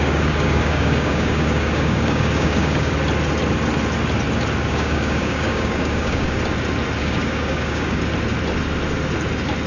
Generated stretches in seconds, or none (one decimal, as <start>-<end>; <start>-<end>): 0.0-2.9; 4.6-6.4; 7.0-8.0